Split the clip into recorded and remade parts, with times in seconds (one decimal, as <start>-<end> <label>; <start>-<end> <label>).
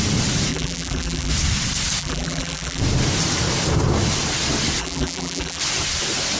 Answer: 0.0-0.5 recorded; 0.5-1.3 remade; 1.3-2.0 recorded; 2.0-2.8 remade; 2.8-4.8 recorded; 4.8-5.6 remade; 5.6-6.4 recorded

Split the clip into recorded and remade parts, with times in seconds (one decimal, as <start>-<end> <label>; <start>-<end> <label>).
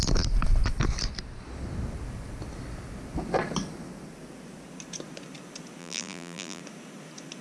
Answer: 0.0-5.8 recorded; 5.8-6.6 remade; 6.6-7.4 recorded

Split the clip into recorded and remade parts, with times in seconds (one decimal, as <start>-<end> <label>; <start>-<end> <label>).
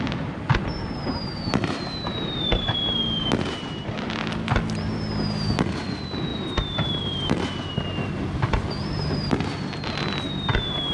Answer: 0.0-6.3 recorded; 6.3-7.4 remade; 7.4-8.8 recorded; 8.8-9.4 remade; 9.4-10.9 recorded